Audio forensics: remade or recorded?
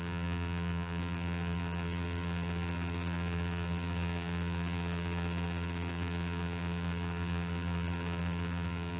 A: remade